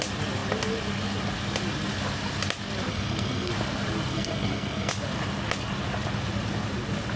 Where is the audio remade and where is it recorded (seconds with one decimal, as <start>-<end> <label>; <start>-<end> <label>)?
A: 0.0-2.9 recorded; 2.9-3.5 remade; 3.5-4.1 recorded; 4.1-4.9 remade; 4.9-7.2 recorded